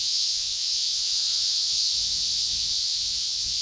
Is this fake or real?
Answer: fake